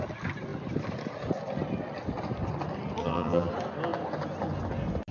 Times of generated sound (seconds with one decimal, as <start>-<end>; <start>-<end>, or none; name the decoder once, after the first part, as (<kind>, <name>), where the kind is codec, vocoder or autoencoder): 3.0-3.5 (vocoder, HiFi-GAN)